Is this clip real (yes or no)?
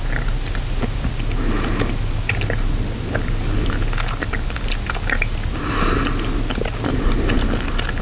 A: yes